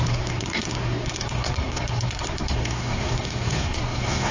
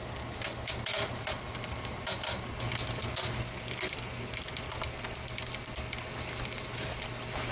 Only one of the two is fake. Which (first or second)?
first